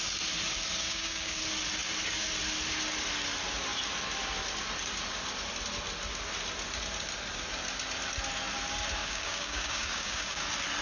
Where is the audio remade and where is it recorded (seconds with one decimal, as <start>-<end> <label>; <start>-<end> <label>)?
0.0-0.8 recorded; 0.8-1.4 remade; 1.4-9.0 recorded; 9.0-10.4 remade; 10.4-10.8 recorded